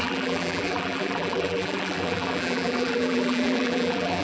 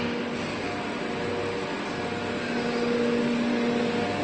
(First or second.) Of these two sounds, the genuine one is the second